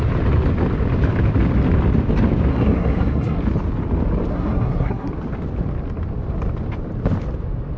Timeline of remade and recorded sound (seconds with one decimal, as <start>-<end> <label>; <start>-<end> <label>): 0.0-2.5 recorded; 2.5-3.4 remade; 3.4-4.3 recorded; 4.3-5.1 remade; 5.1-7.8 recorded